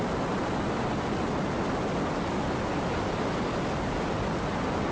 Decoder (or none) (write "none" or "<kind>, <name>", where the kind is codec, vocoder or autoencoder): none